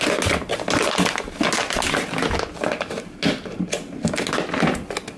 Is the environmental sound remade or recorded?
recorded